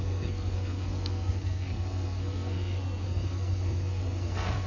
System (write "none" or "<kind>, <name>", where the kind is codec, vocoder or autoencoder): codec, SNAC